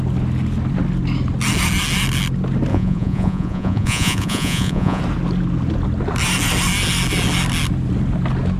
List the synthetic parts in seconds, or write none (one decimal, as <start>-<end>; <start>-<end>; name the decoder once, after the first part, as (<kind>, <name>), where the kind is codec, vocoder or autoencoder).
2.7-5.0 (vocoder, Vocos)